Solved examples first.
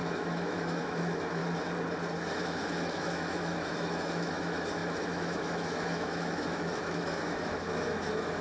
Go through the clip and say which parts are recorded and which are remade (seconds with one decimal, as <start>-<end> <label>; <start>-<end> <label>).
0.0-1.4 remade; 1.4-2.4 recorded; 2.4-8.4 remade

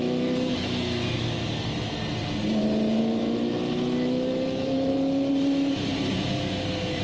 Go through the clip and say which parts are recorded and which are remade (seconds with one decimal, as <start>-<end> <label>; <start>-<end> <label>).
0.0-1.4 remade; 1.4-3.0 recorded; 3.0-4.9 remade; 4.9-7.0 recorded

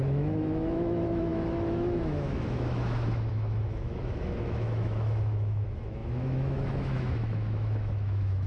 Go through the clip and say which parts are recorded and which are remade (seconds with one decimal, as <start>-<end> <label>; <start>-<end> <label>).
0.0-8.5 remade

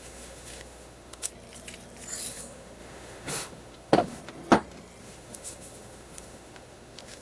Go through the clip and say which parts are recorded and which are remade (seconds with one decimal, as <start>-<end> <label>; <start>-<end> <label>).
0.0-1.3 remade; 1.3-2.3 recorded; 2.3-4.2 remade; 4.2-5.0 recorded; 5.0-7.2 remade

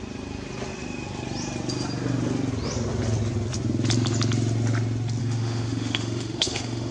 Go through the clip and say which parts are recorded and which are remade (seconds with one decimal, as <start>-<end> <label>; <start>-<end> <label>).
0.0-5.2 recorded; 5.2-6.9 remade

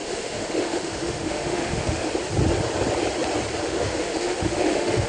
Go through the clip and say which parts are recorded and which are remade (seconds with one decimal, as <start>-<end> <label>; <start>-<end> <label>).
0.0-2.0 remade; 2.0-3.6 recorded; 3.6-5.1 remade

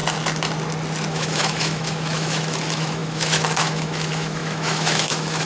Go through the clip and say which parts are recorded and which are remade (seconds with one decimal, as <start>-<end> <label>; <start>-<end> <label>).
0.0-1.1 recorded; 1.1-5.5 remade